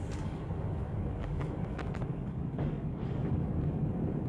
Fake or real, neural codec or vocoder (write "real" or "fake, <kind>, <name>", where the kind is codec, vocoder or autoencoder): fake, codec, DAC